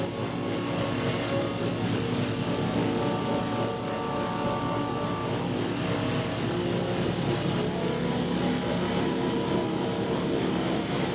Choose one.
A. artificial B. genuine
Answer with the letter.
B